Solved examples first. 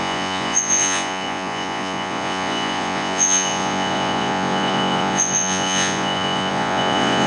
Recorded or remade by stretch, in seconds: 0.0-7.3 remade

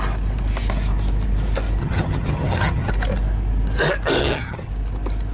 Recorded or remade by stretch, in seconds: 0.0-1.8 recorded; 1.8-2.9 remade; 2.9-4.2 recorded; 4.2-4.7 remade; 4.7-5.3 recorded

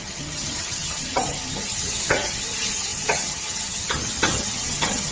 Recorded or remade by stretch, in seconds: 0.0-5.1 remade

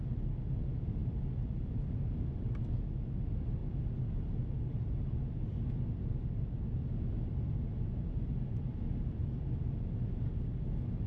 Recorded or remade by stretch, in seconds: 0.0-11.1 recorded

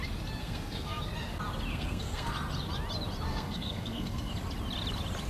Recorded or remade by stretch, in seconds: 0.0-0.4 recorded; 0.4-1.0 remade; 1.0-1.7 recorded; 1.7-2.3 remade; 2.3-3.3 recorded; 3.3-4.3 remade; 4.3-5.3 recorded

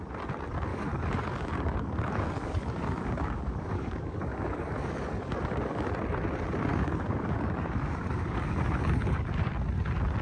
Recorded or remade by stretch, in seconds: 0.0-0.7 recorded; 0.7-5.9 remade; 5.9-6.7 recorded; 6.7-9.5 remade; 9.5-10.2 recorded